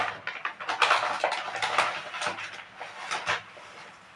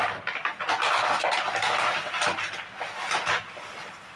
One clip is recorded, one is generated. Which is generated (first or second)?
second